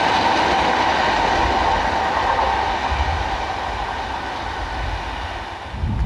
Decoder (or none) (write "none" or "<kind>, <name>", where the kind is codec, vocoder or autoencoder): none